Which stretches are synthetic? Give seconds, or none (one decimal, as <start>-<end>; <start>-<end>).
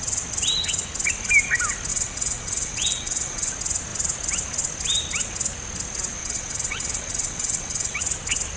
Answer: 1.9-3.5; 6.2-8.0